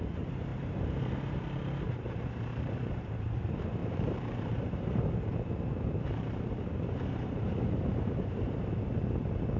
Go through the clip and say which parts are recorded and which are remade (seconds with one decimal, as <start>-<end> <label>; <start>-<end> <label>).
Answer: 0.0-0.5 recorded; 0.5-1.4 remade; 1.4-2.5 recorded; 2.5-3.4 remade; 3.4-3.8 recorded; 3.8-8.8 remade; 8.8-9.6 recorded